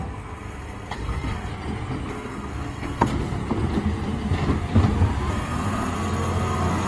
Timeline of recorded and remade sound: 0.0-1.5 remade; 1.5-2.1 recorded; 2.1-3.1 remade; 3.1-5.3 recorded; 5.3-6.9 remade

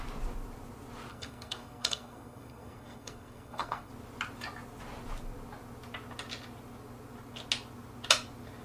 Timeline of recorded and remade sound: 0.0-1.1 recorded; 1.1-3.9 remade; 3.9-8.6 recorded

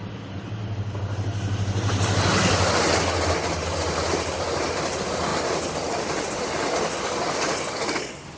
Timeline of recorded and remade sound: 0.0-8.4 recorded

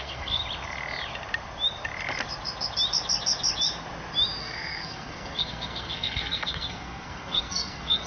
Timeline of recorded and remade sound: 0.0-0.4 remade; 0.4-4.4 recorded; 4.4-8.1 remade

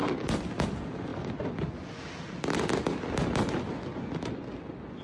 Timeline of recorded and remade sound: 0.0-5.0 recorded

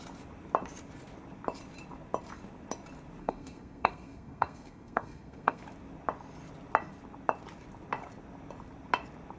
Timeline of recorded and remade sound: 0.0-3.2 recorded; 3.2-5.6 remade; 5.6-9.4 recorded